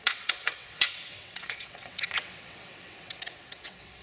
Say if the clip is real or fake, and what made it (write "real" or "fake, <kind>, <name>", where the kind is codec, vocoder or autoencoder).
fake, vocoder, WaveNeXt